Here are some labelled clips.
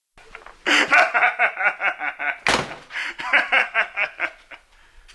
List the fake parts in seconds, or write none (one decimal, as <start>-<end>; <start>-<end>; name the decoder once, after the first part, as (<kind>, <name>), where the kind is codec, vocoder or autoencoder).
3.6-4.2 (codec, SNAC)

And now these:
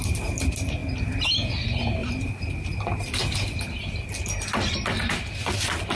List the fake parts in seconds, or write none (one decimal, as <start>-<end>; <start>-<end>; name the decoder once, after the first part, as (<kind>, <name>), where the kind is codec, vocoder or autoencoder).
2.0-3.2 (vocoder, BigVGAN v2)

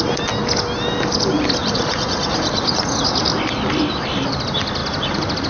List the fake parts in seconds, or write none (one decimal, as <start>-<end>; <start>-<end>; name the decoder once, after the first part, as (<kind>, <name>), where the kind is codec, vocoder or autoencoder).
1.6-3.2 (vocoder, Vocos)

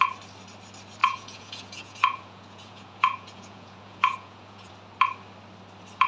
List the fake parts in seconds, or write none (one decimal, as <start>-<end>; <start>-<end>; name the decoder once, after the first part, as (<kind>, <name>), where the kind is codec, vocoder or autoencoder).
1.0-4.7 (vocoder, Vocos)